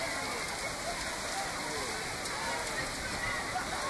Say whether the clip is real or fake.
real